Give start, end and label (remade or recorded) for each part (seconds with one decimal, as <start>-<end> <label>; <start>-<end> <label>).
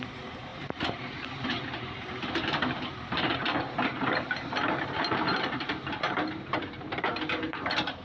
0.0-8.0 remade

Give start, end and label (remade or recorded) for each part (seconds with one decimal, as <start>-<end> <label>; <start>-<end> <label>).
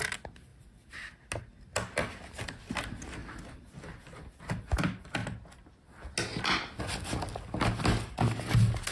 0.0-8.9 recorded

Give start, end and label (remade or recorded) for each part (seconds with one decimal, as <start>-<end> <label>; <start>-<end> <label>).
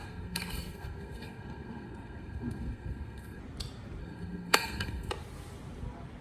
0.0-3.4 remade; 3.4-4.0 recorded; 4.0-5.1 remade; 5.1-6.2 recorded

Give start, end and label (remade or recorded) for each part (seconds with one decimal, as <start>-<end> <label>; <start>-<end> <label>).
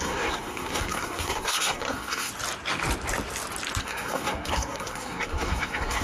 0.0-2.3 remade; 2.3-3.8 recorded; 3.8-6.0 remade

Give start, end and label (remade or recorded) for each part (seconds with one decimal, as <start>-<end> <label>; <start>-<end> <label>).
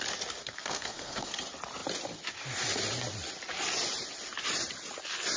0.0-0.4 recorded; 0.4-1.3 remade; 1.3-5.4 recorded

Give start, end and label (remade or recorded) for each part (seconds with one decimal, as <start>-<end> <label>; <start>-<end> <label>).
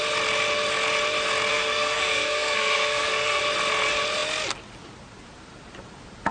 0.0-1.5 recorded; 1.5-3.4 remade; 3.4-6.3 recorded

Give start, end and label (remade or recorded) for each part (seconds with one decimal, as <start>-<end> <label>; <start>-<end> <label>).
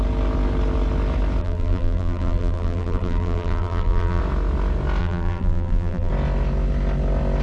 0.0-1.4 recorded; 1.4-4.2 remade; 4.2-5.0 recorded; 5.0-6.1 remade; 6.1-7.4 recorded